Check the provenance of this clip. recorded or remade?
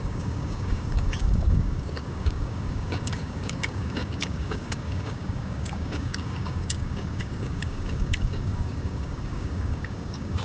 remade